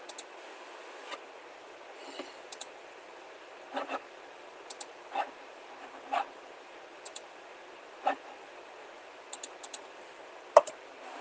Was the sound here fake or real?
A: real